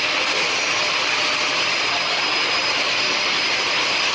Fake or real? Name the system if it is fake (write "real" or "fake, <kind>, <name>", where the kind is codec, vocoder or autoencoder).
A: real